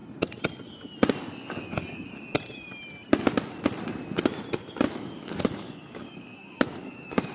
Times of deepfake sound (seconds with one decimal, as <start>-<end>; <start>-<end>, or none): 1.3-2.1; 4.9-7.3